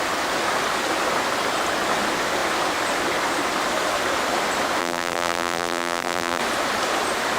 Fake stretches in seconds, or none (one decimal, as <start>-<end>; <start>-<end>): 4.8-6.4